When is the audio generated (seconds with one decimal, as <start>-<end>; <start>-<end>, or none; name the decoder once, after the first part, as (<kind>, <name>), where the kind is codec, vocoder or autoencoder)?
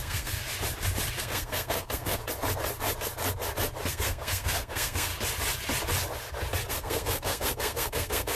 0.0-0.4 (codec, SNAC); 1.2-2.2; 3.9-5.1; 6.7-8.4